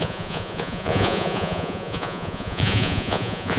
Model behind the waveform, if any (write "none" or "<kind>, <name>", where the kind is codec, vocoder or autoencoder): vocoder, Vocos